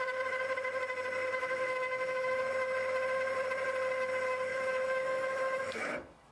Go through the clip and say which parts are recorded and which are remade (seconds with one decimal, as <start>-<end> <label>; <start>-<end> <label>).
0.0-1.3 recorded; 1.3-2.5 remade; 2.5-4.5 recorded; 4.5-6.3 remade

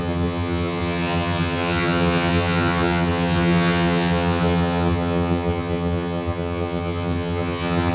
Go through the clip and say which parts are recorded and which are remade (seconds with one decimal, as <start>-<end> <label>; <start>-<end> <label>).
0.0-7.9 remade

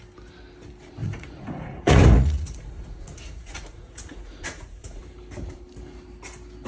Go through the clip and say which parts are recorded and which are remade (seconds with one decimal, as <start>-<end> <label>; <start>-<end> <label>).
0.0-1.0 recorded; 1.0-5.0 remade; 5.0-6.7 recorded

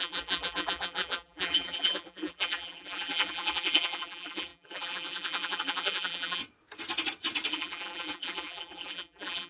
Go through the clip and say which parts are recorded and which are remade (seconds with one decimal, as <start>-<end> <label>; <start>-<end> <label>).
0.0-6.4 remade; 6.4-7.5 recorded; 7.5-9.5 remade

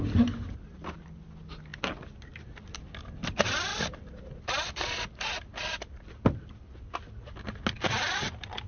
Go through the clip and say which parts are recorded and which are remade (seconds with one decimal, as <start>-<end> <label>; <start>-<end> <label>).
0.0-8.7 recorded

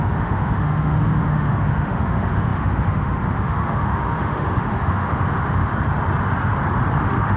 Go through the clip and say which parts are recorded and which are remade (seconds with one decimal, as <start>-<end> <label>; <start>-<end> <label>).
0.0-5.7 remade; 5.7-7.0 recorded; 7.0-7.4 remade

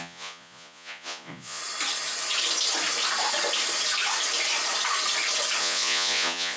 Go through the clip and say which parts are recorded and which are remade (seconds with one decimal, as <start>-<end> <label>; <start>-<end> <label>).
0.0-1.6 remade; 1.6-5.6 recorded; 5.6-6.6 remade

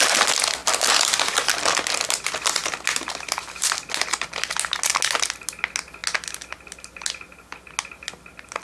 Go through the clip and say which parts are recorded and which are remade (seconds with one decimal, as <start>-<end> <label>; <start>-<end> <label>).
0.0-8.6 recorded